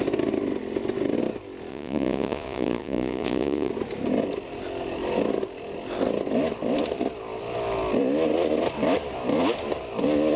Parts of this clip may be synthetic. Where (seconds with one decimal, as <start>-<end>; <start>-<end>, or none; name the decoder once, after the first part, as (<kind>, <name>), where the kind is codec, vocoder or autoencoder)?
1.7-3.7 (vocoder, Vocos)